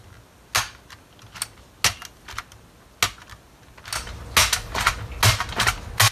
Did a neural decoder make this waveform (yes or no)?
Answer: no